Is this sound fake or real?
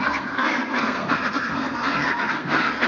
fake